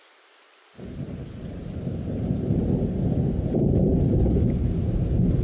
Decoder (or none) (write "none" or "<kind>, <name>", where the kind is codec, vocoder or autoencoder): vocoder, BigVGAN v2